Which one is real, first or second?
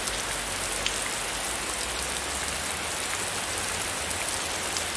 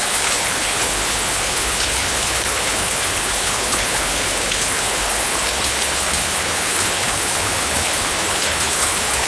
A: first